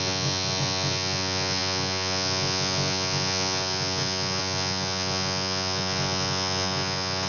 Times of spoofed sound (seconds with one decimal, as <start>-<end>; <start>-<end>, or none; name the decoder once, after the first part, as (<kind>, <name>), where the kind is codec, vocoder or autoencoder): 0.0-7.3 (vocoder, Vocos)